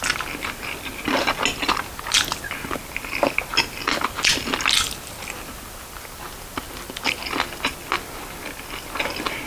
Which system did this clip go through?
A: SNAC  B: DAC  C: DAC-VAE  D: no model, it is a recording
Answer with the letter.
D